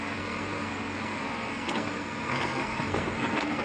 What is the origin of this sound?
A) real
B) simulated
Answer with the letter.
B